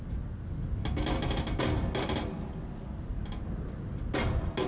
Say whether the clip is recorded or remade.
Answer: recorded